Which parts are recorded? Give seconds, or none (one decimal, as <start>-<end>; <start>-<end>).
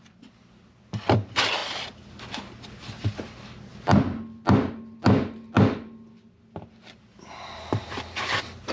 0.0-8.7